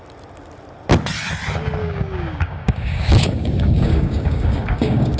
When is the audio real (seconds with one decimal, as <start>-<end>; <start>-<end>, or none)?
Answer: 0.0-1.8

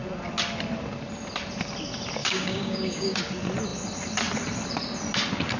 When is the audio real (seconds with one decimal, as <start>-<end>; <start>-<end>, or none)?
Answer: 0.0-2.2; 3.2-5.6

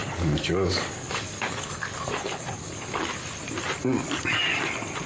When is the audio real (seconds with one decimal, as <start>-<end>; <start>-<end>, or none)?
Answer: 3.1-3.8; 4.6-5.1

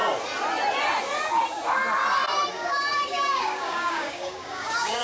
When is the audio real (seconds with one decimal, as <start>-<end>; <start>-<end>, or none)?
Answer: 0.0-2.5

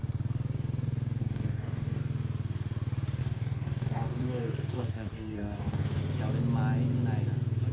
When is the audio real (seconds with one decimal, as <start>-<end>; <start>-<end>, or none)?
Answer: 0.0-1.2; 2.0-3.2; 6.0-7.7